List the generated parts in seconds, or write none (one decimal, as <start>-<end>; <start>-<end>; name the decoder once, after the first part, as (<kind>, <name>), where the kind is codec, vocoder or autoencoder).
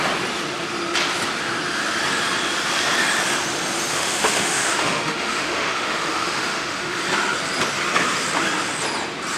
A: 3.9-7.0 (autoencoder, DAC-VAE)